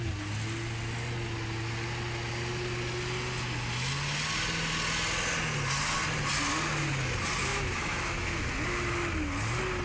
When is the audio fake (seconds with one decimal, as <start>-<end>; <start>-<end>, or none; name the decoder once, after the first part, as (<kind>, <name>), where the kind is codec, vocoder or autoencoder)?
7.5-8.4 (autoencoder, DAC-VAE)